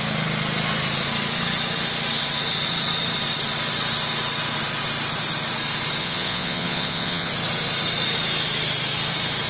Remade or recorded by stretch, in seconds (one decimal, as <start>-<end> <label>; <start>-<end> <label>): 0.0-6.0 recorded; 6.0-7.3 remade; 7.3-9.5 recorded